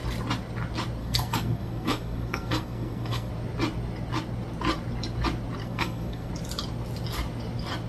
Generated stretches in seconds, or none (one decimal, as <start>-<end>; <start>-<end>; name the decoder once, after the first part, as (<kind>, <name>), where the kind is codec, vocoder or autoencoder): 1.0-3.3 (codec, SNAC); 5.6-6.3

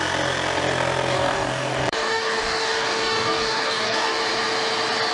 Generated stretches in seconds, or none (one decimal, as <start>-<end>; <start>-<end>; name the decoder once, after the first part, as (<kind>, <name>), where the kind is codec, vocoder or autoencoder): 1.1-4.2 (codec, DAC)